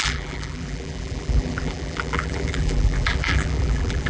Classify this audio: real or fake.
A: fake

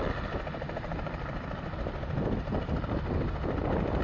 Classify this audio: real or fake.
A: fake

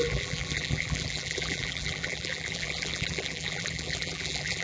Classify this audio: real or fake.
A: fake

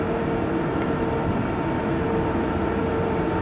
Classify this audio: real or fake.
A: fake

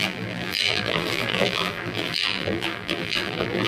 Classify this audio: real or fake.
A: fake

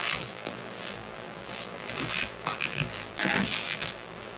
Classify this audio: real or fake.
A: fake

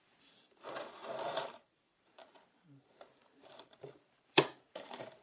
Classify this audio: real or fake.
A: fake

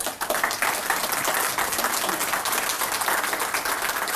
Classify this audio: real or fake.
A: real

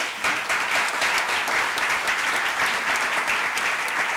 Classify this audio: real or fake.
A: real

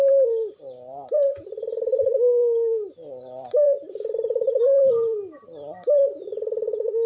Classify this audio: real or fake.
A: fake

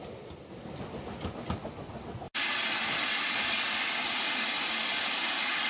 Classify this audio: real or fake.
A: real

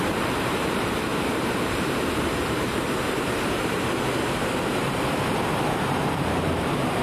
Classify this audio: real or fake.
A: fake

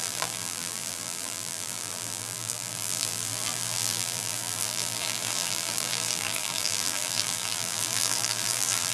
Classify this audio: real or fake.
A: fake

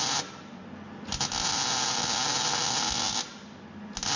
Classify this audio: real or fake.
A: real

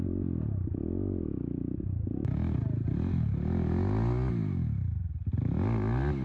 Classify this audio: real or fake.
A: real